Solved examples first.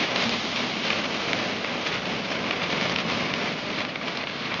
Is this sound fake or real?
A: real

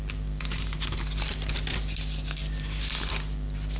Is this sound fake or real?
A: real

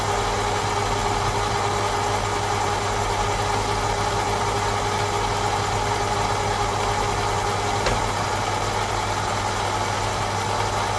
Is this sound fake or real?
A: real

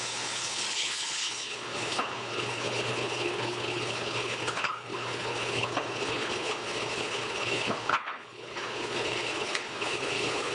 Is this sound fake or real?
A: fake